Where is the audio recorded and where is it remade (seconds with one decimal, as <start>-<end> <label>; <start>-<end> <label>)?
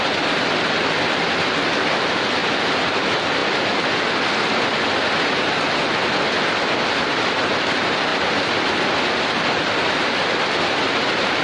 0.0-11.4 recorded